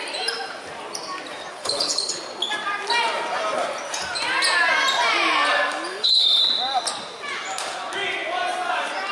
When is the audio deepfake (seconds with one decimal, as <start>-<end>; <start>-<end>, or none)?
1.5-2.2; 5.9-6.4